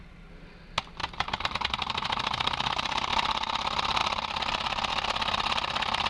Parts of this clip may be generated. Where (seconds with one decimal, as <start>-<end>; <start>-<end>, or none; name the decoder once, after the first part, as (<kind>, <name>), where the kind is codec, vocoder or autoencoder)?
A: 1.0-3.1 (vocoder, BigVGAN v2)